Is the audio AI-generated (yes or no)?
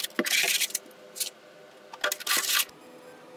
no